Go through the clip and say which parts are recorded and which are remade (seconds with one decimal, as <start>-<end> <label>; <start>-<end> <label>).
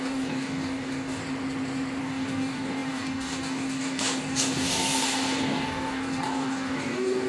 0.0-1.2 remade; 1.2-2.0 recorded; 2.0-7.3 remade